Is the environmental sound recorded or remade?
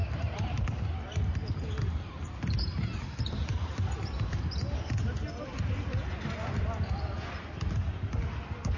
recorded